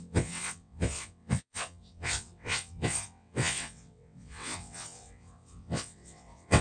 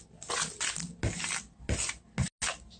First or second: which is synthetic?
first